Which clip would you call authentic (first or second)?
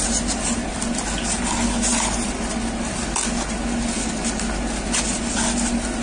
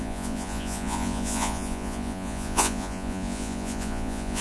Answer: first